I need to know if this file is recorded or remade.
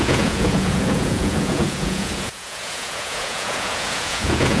remade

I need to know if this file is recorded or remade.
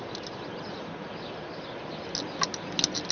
recorded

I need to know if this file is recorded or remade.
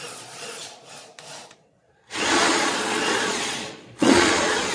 remade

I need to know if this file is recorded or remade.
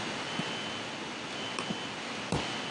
recorded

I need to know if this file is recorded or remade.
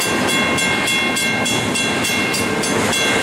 recorded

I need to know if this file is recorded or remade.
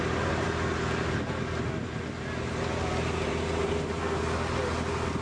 recorded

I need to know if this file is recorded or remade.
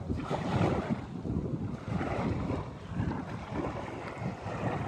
recorded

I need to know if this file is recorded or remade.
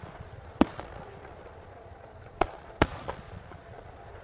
remade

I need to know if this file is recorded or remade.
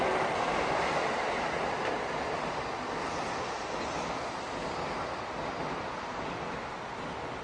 recorded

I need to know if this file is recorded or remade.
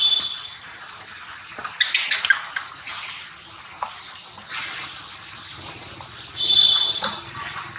recorded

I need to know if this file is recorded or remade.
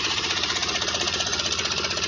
remade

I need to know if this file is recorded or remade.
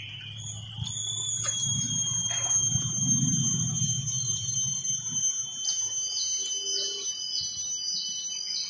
recorded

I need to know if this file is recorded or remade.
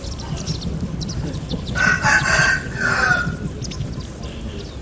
recorded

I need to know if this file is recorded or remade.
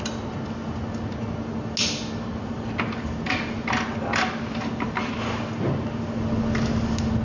recorded